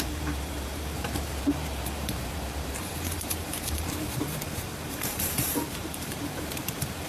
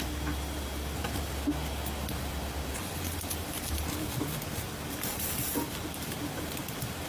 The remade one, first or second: first